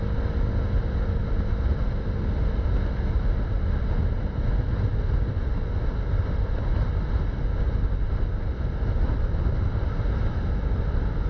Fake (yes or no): no